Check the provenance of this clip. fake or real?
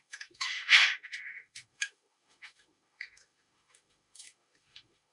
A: fake